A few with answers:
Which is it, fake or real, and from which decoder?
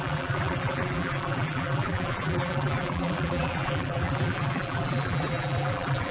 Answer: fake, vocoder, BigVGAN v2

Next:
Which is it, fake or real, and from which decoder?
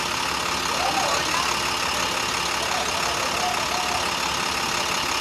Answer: real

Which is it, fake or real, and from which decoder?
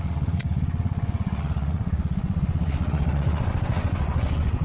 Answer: fake, vocoder, WaveNeXt